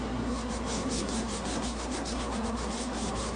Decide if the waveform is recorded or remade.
remade